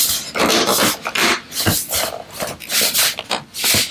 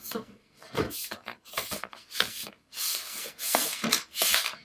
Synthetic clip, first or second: second